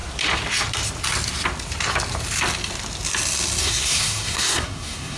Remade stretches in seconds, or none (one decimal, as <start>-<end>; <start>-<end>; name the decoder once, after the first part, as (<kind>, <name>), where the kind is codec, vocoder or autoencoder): 3.6-5.2 (codec, SNAC)